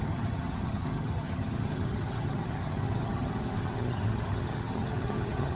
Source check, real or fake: fake